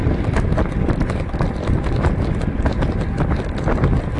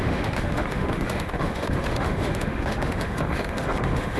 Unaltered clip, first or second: first